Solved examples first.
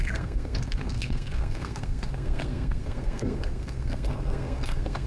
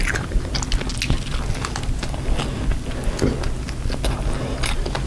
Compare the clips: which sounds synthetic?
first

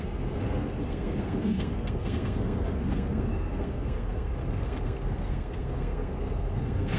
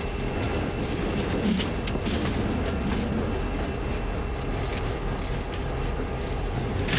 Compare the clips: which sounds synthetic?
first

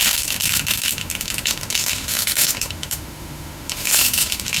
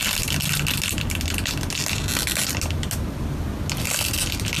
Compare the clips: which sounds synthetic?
first